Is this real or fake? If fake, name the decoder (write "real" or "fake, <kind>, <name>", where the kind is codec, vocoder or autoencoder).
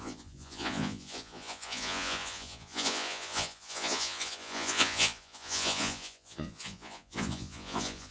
fake, vocoder, Vocos